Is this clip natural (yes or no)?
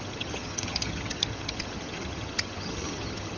no